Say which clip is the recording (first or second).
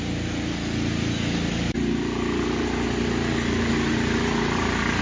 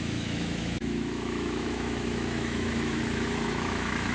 first